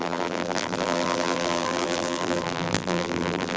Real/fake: fake